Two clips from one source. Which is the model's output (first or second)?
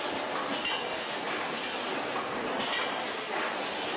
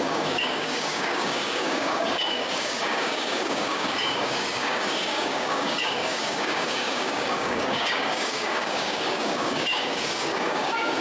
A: second